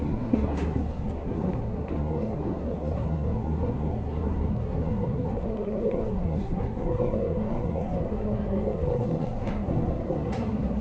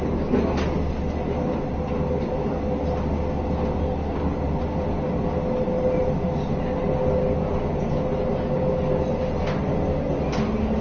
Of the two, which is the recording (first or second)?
second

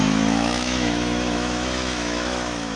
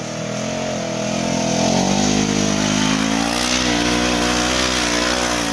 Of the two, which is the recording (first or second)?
second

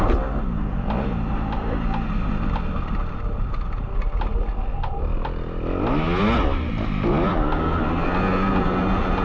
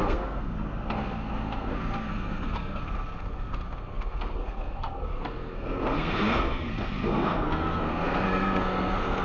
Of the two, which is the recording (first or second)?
first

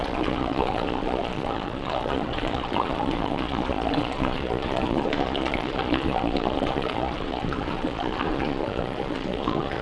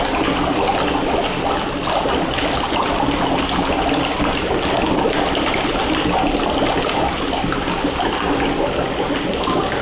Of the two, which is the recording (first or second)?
second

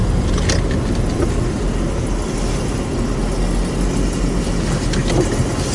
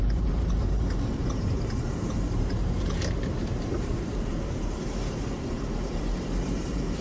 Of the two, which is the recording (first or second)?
first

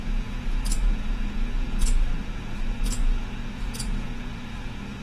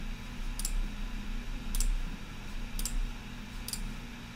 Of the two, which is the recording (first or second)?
second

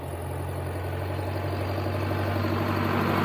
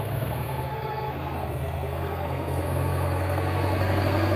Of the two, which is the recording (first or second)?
first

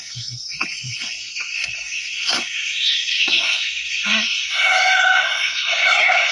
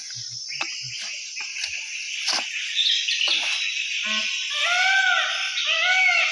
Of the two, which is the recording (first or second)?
second